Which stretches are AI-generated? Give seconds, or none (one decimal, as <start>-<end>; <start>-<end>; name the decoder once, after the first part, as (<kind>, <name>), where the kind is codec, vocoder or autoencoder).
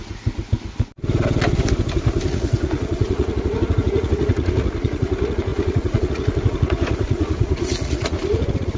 2.3-8.8 (vocoder, Vocos)